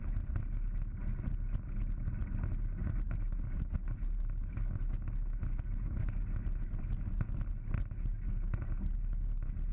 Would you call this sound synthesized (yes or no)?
no